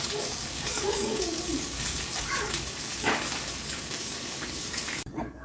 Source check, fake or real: fake